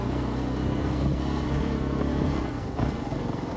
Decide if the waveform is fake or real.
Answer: fake